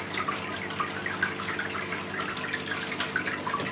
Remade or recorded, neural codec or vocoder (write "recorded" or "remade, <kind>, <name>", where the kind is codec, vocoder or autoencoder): recorded